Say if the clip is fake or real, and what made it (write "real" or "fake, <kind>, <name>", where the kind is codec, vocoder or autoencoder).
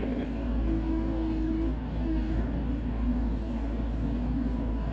fake, codec, DAC